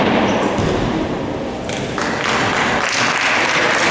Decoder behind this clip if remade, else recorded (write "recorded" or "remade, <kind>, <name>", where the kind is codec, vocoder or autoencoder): recorded